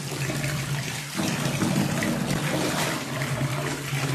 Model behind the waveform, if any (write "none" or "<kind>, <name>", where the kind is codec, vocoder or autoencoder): vocoder, BigVGAN v2